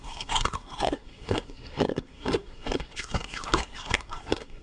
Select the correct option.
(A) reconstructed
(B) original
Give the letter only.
A